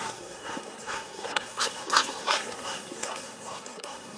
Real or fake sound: fake